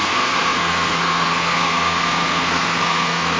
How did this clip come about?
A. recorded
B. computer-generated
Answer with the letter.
B